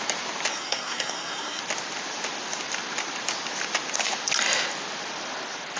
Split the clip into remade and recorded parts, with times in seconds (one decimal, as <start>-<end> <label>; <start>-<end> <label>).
0.0-0.5 recorded; 0.5-1.6 remade; 1.6-5.8 recorded